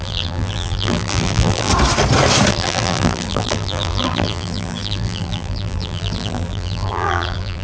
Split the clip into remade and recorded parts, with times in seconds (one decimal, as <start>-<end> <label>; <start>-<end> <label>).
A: 0.0-1.7 remade; 1.7-2.5 recorded; 2.5-7.6 remade